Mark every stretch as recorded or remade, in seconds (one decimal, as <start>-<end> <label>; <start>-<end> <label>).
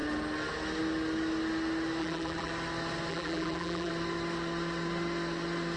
0.0-2.0 recorded; 2.0-2.5 remade; 2.5-3.1 recorded; 3.1-3.9 remade; 3.9-5.8 recorded